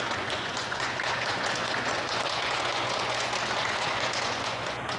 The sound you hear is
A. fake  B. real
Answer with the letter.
A